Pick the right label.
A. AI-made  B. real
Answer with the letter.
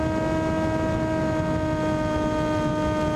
B